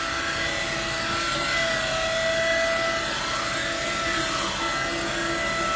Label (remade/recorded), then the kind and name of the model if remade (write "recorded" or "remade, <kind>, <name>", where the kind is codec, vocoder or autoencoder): recorded